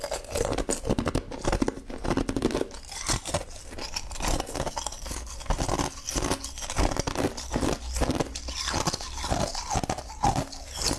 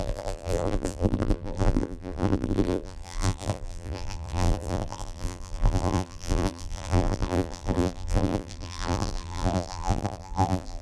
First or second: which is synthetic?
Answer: second